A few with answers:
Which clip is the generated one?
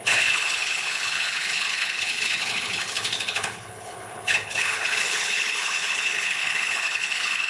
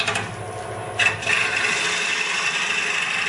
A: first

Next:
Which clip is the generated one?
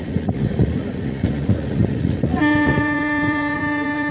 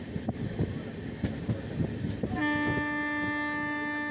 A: first